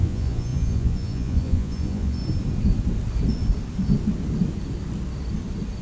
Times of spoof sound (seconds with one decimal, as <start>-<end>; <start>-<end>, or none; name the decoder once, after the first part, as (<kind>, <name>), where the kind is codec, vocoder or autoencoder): 0.0-2.2 (vocoder, Vocos)